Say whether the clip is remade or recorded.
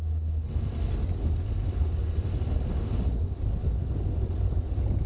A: recorded